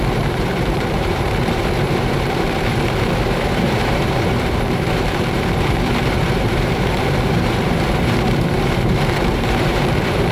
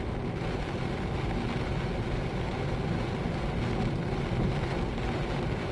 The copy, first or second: first